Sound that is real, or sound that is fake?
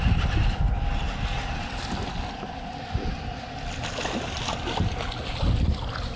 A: real